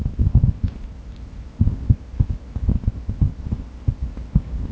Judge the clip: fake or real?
fake